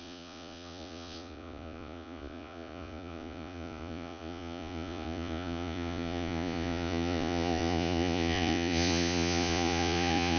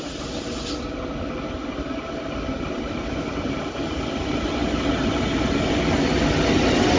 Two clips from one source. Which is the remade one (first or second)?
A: first